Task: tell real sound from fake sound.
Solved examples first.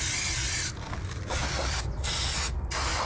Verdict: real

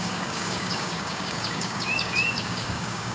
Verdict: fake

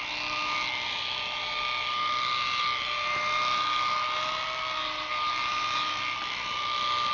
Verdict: real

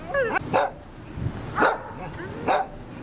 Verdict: real